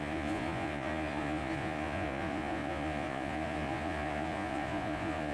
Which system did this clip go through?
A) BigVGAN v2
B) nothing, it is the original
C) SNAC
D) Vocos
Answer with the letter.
D